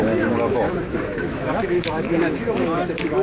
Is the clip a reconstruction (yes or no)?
yes